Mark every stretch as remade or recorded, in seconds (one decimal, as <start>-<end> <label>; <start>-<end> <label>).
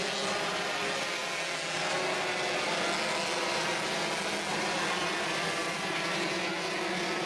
0.0-5.0 recorded; 5.0-6.5 remade; 6.5-7.3 recorded